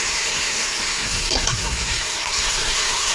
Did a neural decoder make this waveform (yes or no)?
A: yes